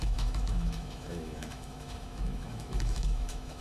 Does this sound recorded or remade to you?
remade